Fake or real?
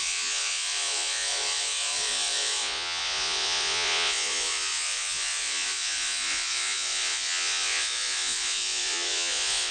fake